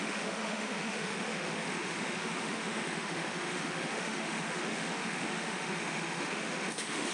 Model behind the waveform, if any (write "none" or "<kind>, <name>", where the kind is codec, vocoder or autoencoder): autoencoder, DAC-VAE